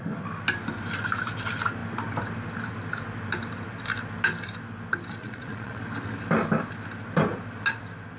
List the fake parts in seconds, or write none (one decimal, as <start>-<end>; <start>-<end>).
5.2-5.8